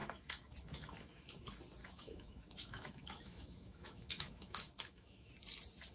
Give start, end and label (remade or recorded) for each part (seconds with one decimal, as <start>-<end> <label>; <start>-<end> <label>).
0.0-1.4 remade; 1.4-1.8 recorded; 1.8-5.3 remade; 5.3-5.9 recorded